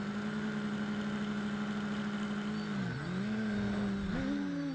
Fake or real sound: real